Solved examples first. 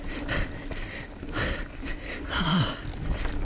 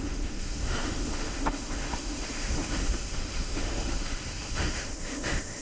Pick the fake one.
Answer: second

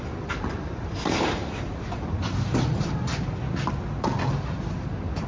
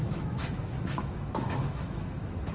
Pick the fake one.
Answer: second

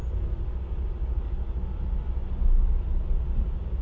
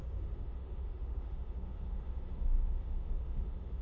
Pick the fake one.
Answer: second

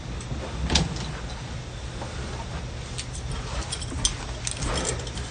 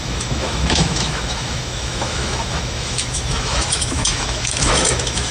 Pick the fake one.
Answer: second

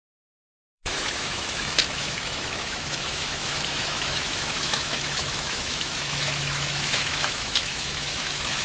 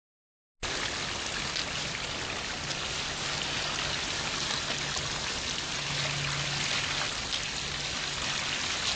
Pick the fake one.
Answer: first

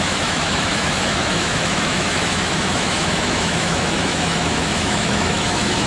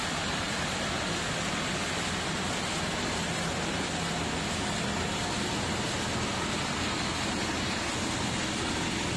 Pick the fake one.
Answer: first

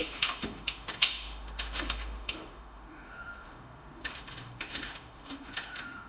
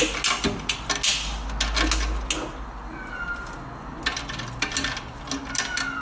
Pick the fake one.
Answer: first